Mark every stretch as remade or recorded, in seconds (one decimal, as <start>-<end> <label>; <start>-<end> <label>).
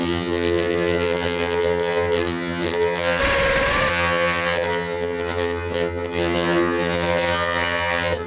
0.0-3.2 remade; 3.2-3.9 recorded; 3.9-8.3 remade